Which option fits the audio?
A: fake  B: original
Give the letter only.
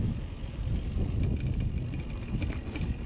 B